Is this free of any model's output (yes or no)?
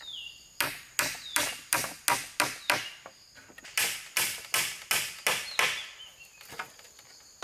yes